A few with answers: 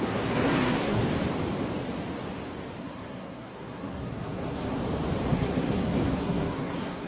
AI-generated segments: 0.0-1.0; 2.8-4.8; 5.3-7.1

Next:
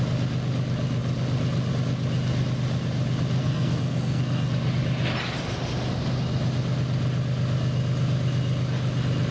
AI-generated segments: 3.4-4.5